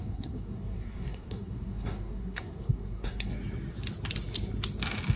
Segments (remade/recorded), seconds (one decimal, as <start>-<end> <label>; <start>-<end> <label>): 0.0-3.3 remade; 3.3-5.2 recorded